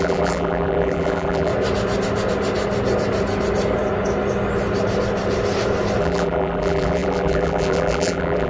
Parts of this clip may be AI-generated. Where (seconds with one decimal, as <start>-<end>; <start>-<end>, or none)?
0.0-1.5; 6.0-8.5